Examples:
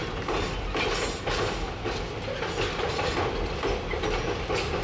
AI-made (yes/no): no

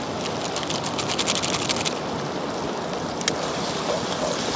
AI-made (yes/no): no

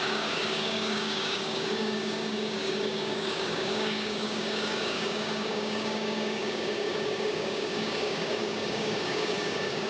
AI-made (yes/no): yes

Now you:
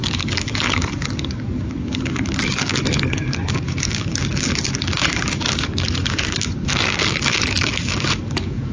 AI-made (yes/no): yes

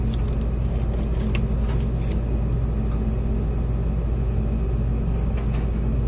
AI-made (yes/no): no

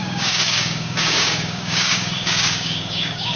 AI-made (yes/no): yes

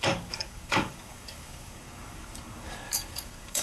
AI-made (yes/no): yes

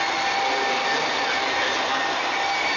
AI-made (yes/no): no